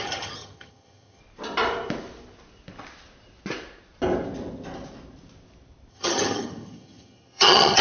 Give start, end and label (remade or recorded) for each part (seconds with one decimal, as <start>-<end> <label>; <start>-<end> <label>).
0.0-1.2 remade; 1.2-5.9 recorded; 5.9-7.8 remade

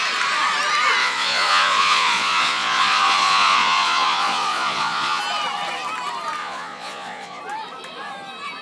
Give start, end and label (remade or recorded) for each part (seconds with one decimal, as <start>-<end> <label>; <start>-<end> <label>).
0.0-1.0 recorded; 1.0-5.2 remade; 5.2-6.4 recorded; 6.4-7.4 remade; 7.4-8.6 recorded

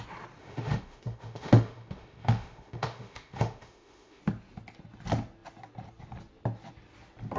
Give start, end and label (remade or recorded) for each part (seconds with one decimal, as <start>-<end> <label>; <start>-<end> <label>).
0.0-0.4 recorded; 0.4-4.2 remade; 4.2-7.4 recorded

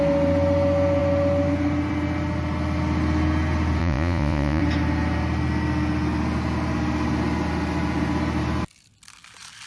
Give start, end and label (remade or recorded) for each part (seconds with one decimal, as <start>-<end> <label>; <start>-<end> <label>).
0.0-3.8 recorded; 3.8-4.6 remade; 4.6-9.7 recorded

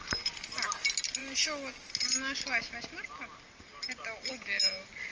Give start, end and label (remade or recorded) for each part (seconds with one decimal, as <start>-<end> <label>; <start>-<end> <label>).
0.0-5.1 recorded

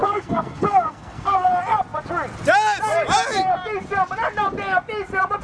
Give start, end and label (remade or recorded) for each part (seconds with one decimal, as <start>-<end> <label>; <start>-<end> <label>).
0.0-1.5 remade; 1.5-5.4 recorded

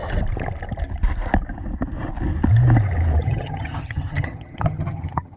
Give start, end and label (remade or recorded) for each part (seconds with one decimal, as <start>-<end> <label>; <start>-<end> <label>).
0.0-3.2 recorded; 3.2-5.4 remade